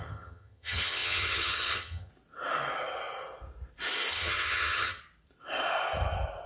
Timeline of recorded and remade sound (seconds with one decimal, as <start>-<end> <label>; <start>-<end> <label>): 0.0-2.1 remade; 2.1-4.1 recorded; 4.1-5.0 remade; 5.0-6.5 recorded